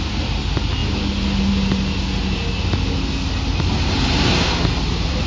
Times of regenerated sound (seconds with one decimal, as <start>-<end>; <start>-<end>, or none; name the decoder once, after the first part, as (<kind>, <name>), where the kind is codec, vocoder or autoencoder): none